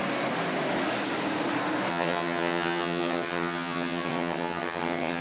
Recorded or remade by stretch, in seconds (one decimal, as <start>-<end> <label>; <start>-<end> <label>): 0.0-1.9 recorded; 1.9-5.2 remade